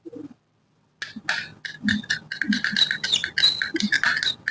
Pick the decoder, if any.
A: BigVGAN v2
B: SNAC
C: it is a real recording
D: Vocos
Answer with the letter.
C